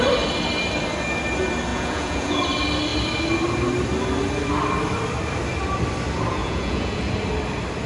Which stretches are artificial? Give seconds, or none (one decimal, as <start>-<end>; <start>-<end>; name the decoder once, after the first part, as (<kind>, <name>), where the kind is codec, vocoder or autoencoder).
1.7-2.4 (vocoder, Vocos); 6.4-7.0